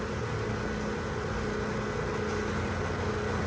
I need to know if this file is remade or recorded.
recorded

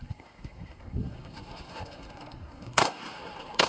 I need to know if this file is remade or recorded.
remade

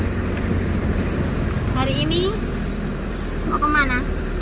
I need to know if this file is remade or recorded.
recorded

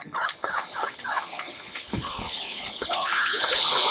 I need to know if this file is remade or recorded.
remade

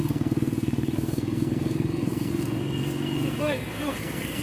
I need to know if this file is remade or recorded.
remade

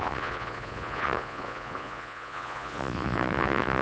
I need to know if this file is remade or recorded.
remade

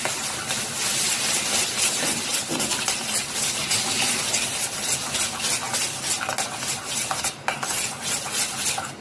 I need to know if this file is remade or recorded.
recorded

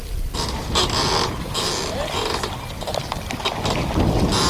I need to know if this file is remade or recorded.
recorded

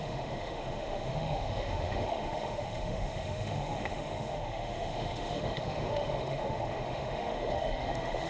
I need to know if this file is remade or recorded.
remade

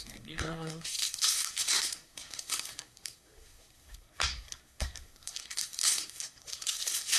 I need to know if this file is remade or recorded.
remade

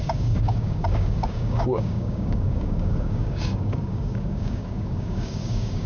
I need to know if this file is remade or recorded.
remade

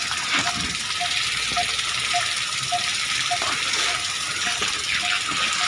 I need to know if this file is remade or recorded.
recorded